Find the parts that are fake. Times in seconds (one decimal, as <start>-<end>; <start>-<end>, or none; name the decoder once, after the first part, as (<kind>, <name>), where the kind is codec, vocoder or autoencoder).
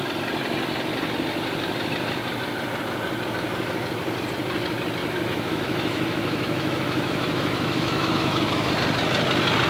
5.0-8.7 (autoencoder, DAC-VAE)